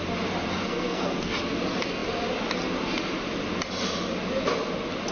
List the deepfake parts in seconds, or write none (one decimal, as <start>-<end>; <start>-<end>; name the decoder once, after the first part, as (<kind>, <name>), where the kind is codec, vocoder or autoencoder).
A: 0.5-1.3 (codec, SNAC)